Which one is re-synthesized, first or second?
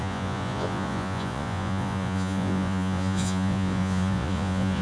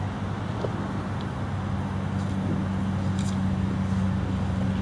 first